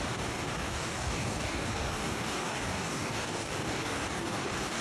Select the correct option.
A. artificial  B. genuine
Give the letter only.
A